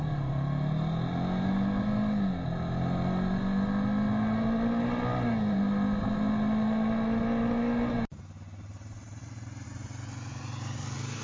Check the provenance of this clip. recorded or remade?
recorded